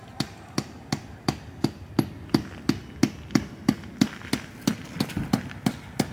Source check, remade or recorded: recorded